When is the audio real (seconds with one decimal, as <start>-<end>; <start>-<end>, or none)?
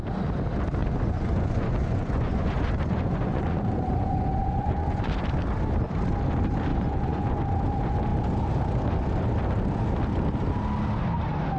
0.0-0.8; 5.1-6.7; 7.4-11.6